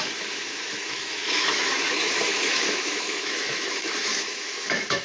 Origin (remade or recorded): remade